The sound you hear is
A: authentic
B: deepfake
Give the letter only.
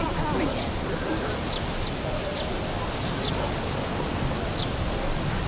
A